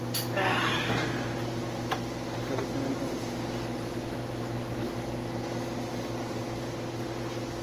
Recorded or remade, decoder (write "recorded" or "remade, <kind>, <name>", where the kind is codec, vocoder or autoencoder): recorded